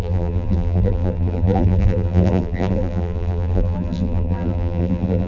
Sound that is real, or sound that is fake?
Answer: fake